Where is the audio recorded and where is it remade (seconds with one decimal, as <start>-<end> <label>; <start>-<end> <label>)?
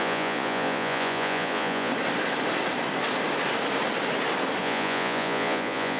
0.0-1.9 remade; 1.9-4.6 recorded; 4.6-6.0 remade